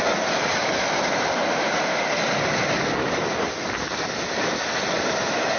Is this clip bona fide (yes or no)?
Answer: yes